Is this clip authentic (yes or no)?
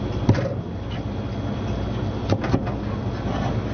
yes